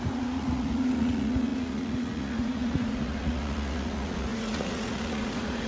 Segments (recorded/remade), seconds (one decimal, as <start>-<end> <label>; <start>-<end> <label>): 0.0-5.7 remade